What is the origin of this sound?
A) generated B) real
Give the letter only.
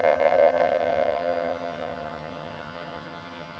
A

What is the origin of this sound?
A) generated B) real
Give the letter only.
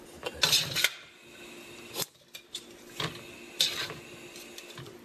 B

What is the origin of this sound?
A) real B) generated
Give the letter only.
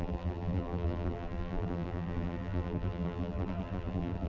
B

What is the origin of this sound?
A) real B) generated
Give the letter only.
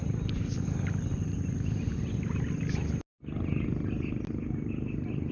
A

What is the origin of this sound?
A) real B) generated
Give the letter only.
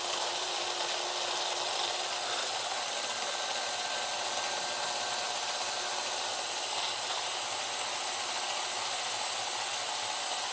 A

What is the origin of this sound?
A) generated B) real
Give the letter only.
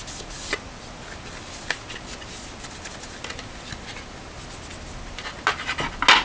B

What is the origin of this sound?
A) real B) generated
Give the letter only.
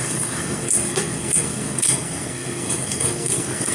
B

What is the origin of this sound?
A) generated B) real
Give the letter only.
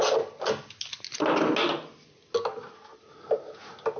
B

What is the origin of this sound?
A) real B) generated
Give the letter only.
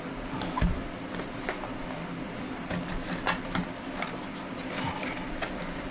A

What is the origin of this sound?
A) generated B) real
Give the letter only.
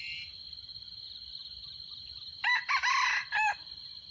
B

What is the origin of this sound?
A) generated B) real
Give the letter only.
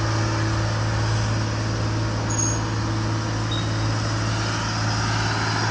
B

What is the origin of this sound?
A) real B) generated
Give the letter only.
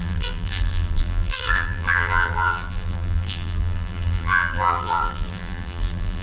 B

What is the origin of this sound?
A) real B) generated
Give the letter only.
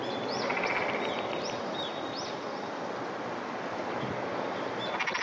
A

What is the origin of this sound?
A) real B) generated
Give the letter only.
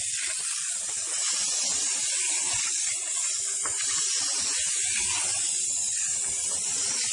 A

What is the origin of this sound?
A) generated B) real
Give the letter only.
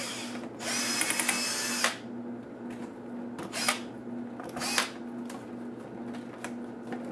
B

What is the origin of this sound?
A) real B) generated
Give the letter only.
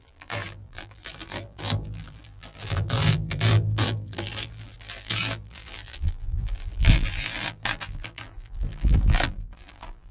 B